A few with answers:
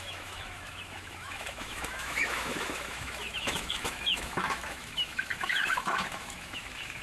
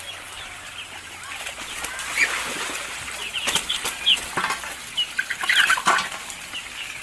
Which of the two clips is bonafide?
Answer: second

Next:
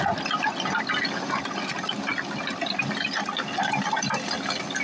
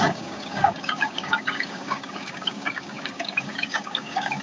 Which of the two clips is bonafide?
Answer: first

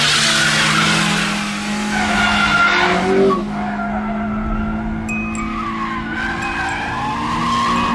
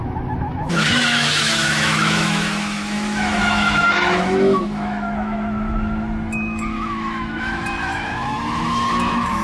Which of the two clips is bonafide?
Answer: first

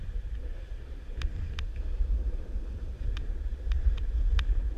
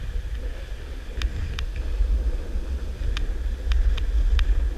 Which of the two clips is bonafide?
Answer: second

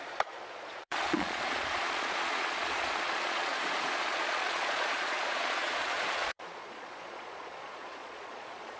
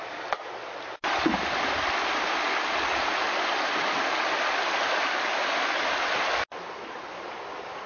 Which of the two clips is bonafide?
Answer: second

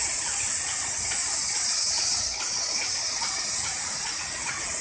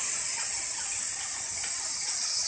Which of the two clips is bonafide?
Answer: second